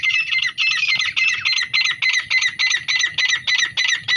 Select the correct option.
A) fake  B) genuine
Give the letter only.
B